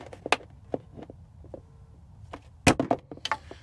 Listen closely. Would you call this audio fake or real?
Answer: real